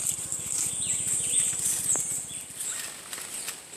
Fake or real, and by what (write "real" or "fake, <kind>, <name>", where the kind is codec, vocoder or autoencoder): real